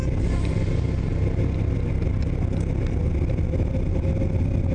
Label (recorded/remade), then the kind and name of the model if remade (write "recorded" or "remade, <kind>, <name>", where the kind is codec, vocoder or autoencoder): recorded